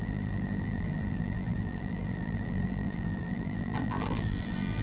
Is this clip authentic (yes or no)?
no